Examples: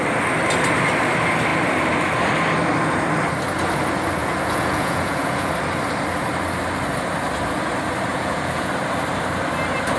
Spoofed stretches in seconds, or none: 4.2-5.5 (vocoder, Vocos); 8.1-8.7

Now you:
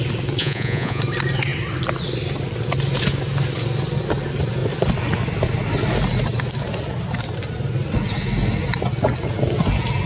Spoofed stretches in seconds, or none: 0.4-1.0 (vocoder, Vocos)

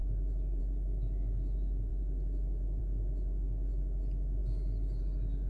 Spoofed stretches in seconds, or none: none

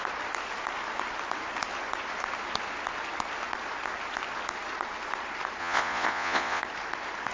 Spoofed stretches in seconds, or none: 5.6-6.6 (vocoder, Vocos)

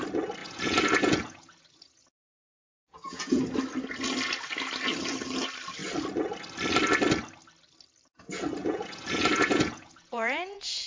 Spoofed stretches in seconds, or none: 0.4-3.4 (vocoder, Vocos); 8.6-10.9

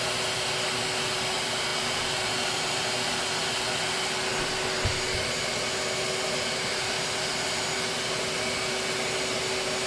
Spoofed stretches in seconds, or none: none

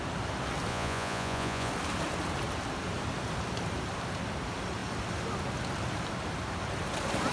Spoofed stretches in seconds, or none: 0.7-1.7 (vocoder, Vocos)